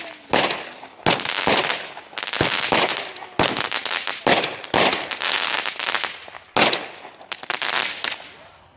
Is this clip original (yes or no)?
yes